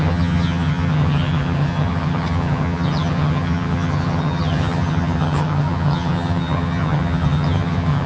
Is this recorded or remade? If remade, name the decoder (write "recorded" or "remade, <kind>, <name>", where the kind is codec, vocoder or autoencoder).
remade, vocoder, HiFi-GAN